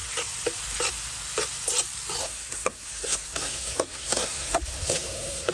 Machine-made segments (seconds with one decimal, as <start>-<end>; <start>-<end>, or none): 2.2-5.5